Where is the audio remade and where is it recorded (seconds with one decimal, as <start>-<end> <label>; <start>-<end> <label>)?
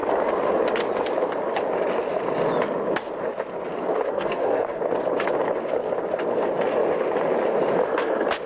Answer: 0.0-4.1 recorded; 4.1-4.8 remade; 4.8-8.5 recorded